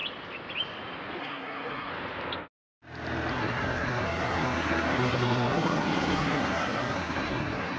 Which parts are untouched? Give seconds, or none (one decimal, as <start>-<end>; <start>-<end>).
0.0-1.2; 1.9-3.3